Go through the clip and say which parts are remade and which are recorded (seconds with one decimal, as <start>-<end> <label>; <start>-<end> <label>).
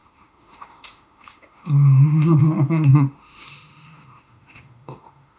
0.0-5.4 remade